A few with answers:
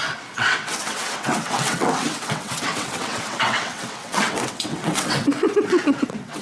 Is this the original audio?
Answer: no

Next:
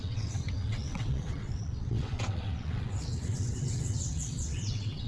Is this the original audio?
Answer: no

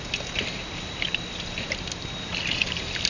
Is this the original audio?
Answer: yes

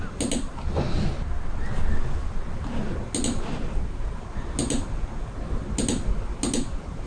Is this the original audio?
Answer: yes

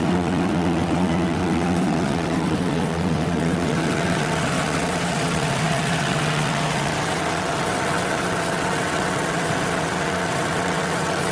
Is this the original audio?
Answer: no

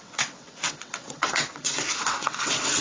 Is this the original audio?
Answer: no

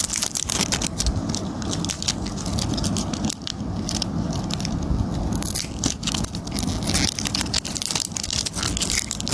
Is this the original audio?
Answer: yes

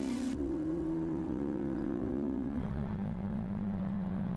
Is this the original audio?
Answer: no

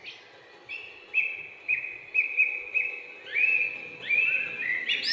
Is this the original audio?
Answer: yes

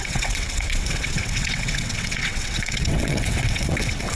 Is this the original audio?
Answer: no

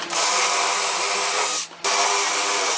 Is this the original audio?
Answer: yes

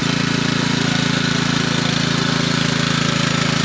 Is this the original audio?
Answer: yes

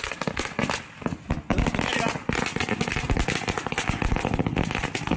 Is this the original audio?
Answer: yes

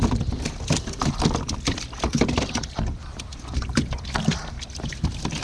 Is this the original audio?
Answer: yes